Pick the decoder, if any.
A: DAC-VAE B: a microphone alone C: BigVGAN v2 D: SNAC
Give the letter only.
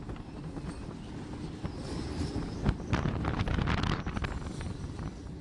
B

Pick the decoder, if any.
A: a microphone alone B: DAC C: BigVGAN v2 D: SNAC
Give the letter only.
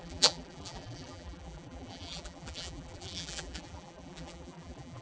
C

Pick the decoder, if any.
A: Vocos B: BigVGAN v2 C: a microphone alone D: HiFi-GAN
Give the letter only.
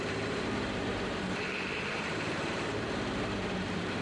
B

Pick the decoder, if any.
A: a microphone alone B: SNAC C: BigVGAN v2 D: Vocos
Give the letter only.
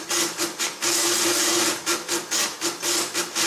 A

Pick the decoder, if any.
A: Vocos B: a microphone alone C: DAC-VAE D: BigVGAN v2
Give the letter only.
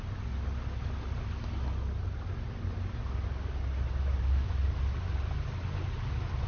B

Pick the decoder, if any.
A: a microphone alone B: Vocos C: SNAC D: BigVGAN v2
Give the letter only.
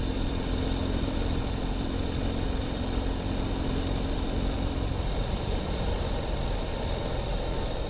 D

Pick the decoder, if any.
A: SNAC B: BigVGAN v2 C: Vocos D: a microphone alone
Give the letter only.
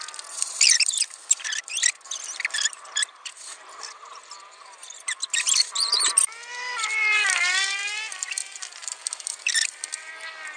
B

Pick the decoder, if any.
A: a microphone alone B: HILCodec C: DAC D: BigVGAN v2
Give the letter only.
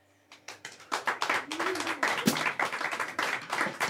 D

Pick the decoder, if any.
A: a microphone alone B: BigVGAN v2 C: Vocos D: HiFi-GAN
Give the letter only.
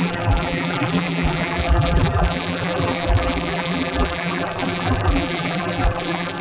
B